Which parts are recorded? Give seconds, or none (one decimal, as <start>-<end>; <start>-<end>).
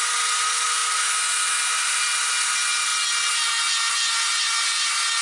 0.0-5.2